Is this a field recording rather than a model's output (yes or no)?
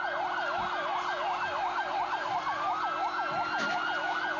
yes